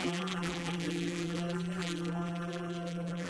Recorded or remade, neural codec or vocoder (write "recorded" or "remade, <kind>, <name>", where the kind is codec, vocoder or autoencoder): remade, vocoder, BigVGAN v2